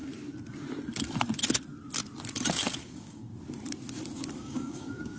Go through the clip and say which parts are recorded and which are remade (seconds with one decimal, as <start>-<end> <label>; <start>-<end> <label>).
0.0-2.8 recorded; 2.8-3.3 remade; 3.3-4.3 recorded; 4.3-5.2 remade